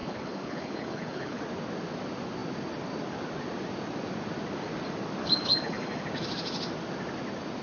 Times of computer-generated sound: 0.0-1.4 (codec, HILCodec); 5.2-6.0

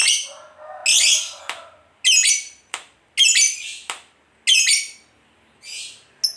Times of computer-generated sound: none

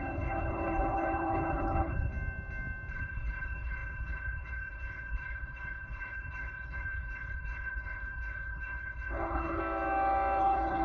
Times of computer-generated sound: 0.0-2.1 (codec, HILCodec); 2.9-9.6; 10.4-10.8

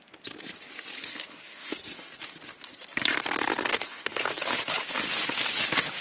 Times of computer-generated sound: 0.9-1.7 (codec, HILCodec); 3.7-4.4